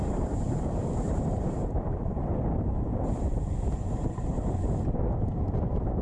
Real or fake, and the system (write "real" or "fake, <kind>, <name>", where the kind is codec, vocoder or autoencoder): fake, vocoder, BigVGAN v2